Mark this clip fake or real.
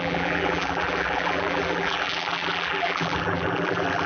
fake